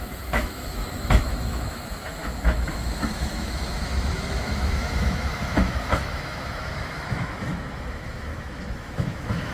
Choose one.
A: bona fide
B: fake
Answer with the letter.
B